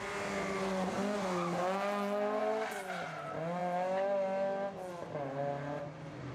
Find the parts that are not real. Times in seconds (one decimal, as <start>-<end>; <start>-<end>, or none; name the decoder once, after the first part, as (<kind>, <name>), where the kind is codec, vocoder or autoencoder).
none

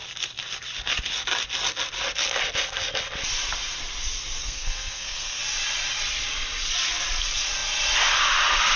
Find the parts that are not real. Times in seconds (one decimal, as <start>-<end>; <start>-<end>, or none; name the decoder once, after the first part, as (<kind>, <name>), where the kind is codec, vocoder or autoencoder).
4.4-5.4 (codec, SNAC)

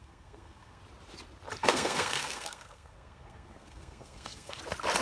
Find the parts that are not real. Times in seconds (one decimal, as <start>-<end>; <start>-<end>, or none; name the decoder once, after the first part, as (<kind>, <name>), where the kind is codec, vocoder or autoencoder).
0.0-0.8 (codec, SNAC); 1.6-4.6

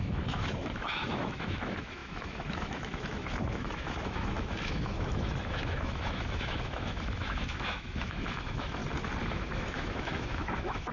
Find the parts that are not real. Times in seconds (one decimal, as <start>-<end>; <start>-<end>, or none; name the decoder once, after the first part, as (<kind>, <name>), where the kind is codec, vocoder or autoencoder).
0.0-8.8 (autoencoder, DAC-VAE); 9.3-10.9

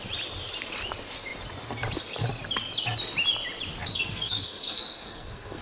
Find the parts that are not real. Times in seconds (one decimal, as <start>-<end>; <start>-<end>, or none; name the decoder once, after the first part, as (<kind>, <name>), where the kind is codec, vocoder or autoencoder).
3.9-5.6 (codec, SNAC)

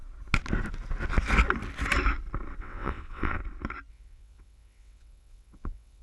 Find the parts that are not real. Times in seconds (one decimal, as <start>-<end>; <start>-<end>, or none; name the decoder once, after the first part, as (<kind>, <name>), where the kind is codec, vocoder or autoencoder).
2.6-3.4 (vocoder, WaveNeXt); 3.9-6.0

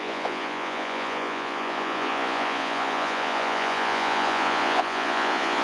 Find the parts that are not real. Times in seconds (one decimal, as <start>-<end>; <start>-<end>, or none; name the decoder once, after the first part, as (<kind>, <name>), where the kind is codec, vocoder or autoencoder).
0.0-5.6 (vocoder, Vocos)